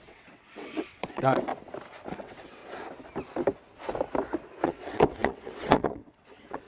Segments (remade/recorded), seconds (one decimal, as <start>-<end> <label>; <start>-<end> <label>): 0.0-1.5 remade; 1.5-2.1 recorded; 2.1-2.6 remade; 2.6-4.6 recorded; 4.6-6.7 remade